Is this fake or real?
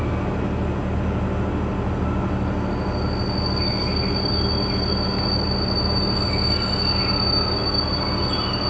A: real